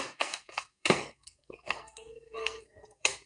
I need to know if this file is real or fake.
fake